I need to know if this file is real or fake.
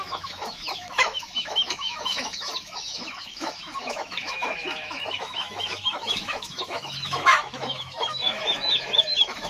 fake